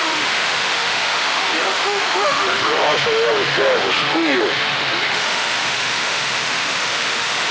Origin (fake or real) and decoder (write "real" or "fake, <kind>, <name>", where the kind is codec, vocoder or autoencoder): fake, autoencoder, DAC-VAE